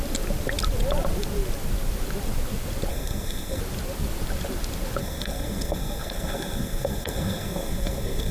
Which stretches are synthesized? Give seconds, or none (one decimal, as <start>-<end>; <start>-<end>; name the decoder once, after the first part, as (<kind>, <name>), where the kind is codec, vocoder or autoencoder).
2.9-3.6 (codec, SNAC); 5.0-8.3